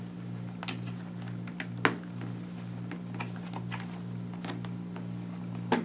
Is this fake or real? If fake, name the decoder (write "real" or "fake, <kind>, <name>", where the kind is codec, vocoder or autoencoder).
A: real